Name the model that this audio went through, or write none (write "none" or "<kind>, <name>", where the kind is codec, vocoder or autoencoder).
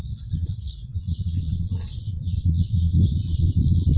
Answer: vocoder, Vocos